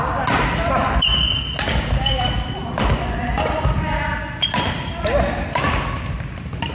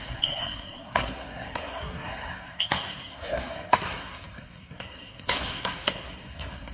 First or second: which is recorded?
first